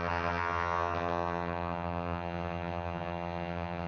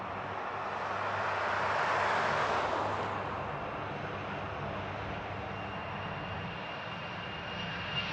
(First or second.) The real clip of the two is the second